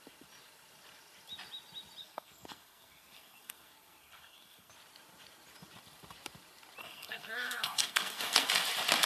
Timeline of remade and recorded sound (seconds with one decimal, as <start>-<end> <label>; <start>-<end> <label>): 0.0-2.0 recorded; 2.0-4.7 remade; 4.7-6.8 recorded; 6.8-8.5 remade; 8.5-9.1 recorded